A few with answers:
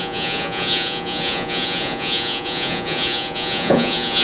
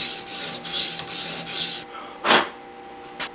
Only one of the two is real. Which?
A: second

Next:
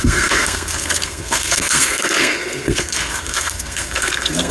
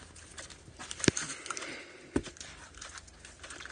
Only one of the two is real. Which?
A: second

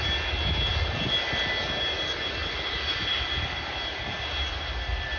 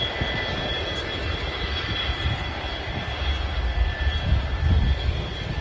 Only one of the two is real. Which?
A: first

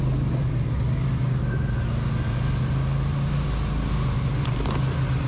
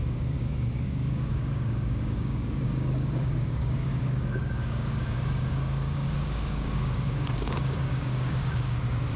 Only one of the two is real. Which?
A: first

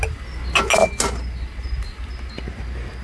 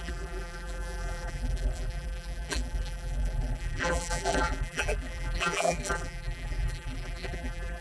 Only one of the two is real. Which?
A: first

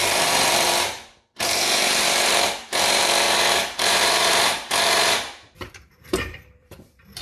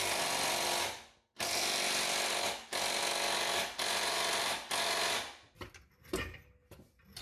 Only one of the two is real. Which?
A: second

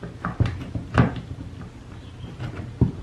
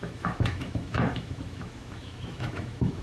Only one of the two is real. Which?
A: first